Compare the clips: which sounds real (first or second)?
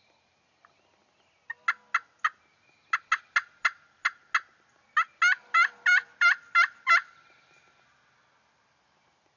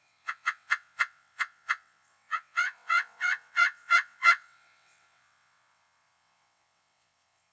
first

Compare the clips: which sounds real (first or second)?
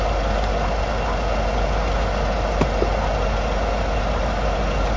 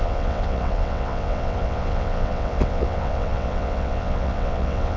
first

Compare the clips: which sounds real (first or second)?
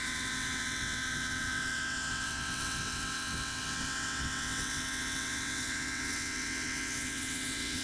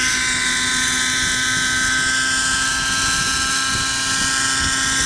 second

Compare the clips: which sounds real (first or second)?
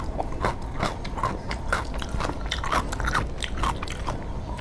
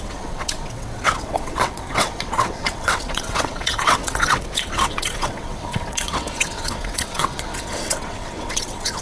first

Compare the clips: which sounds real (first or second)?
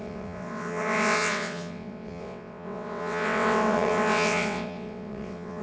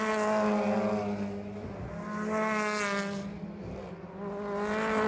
second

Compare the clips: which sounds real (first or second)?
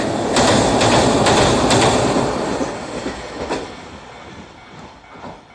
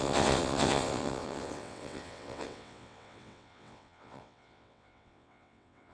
first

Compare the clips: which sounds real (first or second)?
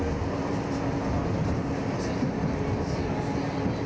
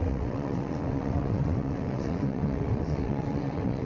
first